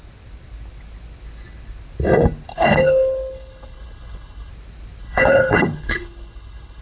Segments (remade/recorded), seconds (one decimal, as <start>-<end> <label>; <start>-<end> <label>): 0.0-2.5 recorded; 2.5-4.5 remade; 4.5-5.0 recorded; 5.0-6.8 remade